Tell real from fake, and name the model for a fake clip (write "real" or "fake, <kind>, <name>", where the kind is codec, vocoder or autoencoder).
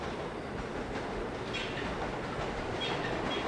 real